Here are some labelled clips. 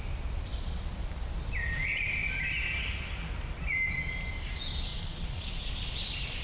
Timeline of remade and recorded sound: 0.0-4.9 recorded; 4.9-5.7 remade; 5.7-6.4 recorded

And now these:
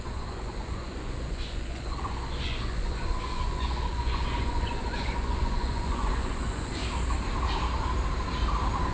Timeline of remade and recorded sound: 0.0-6.8 remade; 6.8-8.9 recorded

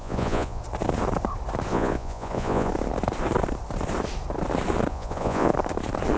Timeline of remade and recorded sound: 0.0-0.6 remade; 0.6-1.7 recorded; 1.7-2.7 remade; 2.7-4.9 recorded; 4.9-5.5 remade; 5.5-6.2 recorded